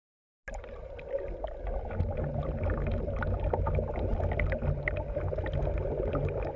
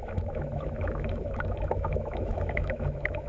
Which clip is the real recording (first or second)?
first